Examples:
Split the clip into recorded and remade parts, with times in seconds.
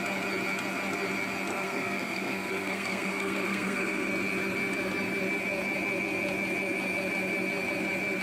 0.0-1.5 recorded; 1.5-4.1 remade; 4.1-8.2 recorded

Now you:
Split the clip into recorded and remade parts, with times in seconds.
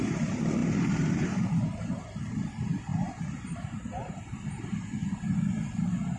0.0-0.6 recorded; 0.6-2.2 remade; 2.2-2.9 recorded; 2.9-4.7 remade; 4.7-6.2 recorded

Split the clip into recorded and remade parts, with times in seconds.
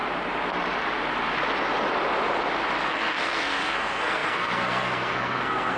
0.0-2.9 recorded; 2.9-5.8 remade